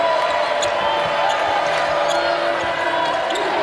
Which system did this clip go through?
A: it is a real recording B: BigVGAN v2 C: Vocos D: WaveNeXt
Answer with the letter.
A